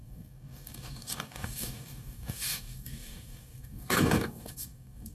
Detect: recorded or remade remade